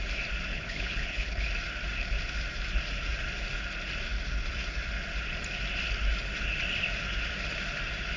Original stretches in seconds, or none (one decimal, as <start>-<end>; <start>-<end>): 0.0-0.5; 1.4-8.2